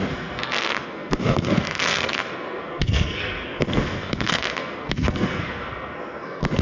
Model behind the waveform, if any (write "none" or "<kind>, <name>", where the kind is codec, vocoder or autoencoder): codec, SNAC